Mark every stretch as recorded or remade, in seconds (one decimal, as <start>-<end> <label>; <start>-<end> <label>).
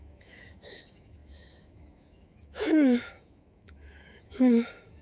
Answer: 0.0-5.0 remade